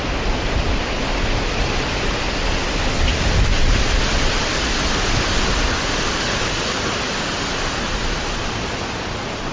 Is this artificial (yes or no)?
no